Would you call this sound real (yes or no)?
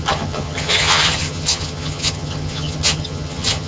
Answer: no